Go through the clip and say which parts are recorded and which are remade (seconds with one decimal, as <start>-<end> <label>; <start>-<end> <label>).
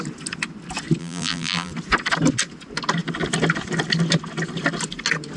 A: 0.0-1.0 recorded; 1.0-1.7 remade; 1.7-5.4 recorded